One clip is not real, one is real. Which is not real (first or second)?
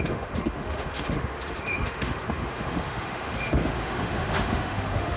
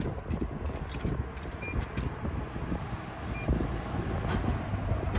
first